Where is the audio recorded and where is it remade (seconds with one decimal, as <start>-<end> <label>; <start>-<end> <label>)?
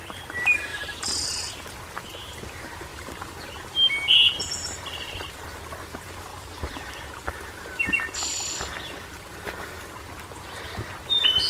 0.0-0.7 recorded; 0.7-1.5 remade; 1.5-2.9 recorded; 2.9-3.4 remade; 3.4-6.3 recorded; 6.3-7.0 remade; 7.0-11.5 recorded